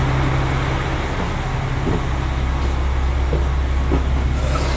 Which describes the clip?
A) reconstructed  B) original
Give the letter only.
B